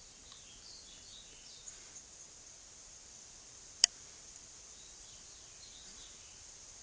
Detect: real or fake fake